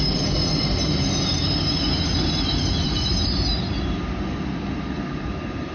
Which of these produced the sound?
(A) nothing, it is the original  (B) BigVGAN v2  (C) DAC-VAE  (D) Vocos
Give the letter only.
B